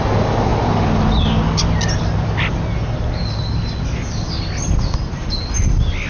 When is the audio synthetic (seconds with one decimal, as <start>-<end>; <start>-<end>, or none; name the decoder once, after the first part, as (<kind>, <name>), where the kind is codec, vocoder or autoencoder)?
none